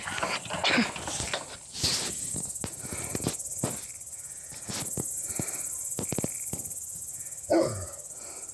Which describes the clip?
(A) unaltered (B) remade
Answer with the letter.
A